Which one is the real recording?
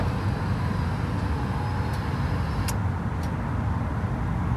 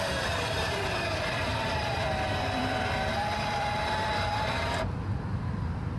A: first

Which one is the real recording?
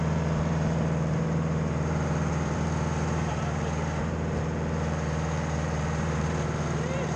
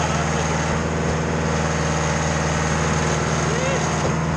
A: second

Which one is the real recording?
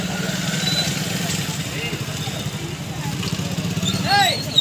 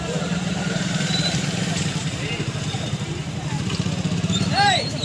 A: first